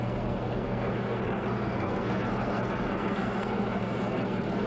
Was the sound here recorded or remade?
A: remade